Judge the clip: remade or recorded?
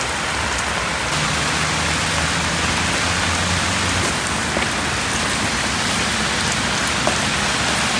recorded